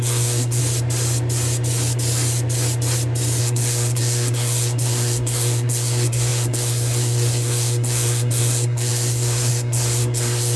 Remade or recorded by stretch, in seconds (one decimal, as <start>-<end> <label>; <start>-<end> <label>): 0.0-0.6 remade; 0.6-3.4 recorded; 3.4-10.6 remade